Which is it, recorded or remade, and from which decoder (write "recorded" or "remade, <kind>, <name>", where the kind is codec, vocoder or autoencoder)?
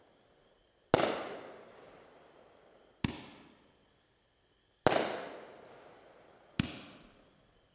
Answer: recorded